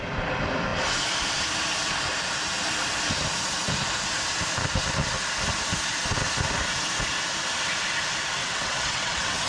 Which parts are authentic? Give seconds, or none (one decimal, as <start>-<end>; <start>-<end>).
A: 0.0-8.4